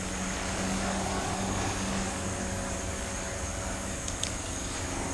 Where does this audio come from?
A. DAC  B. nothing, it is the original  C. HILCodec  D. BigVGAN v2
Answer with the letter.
A